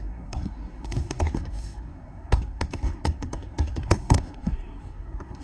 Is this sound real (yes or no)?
no